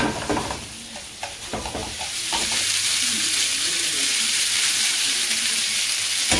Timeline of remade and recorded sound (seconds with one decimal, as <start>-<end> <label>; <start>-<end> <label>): 0.0-1.8 recorded; 1.8-5.6 remade; 5.6-6.4 recorded